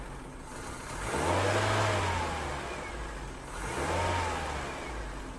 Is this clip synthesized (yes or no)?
no